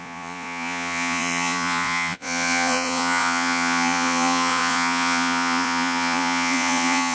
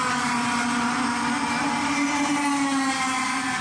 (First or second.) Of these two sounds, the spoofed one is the first